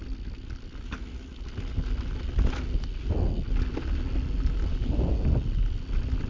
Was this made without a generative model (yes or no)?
yes